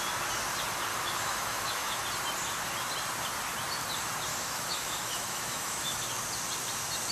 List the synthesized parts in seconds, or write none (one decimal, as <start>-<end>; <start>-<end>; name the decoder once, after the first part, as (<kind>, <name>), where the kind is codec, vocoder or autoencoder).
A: 0.9-2.0 (autoencoder, DAC-VAE); 4.3-6.1